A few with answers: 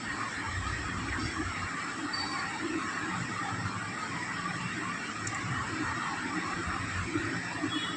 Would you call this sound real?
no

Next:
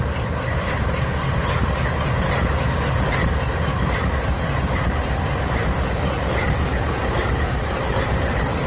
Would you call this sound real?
no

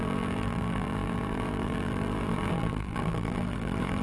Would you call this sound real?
no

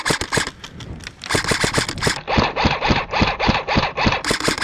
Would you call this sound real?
yes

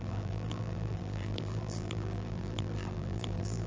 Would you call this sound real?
no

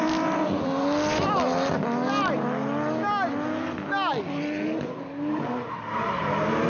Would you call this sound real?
yes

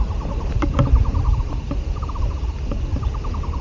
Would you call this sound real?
yes